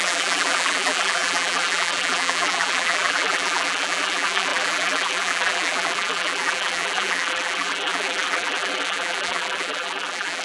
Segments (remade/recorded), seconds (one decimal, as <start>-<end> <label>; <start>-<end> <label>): 0.0-10.4 remade